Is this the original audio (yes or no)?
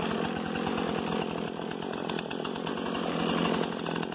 yes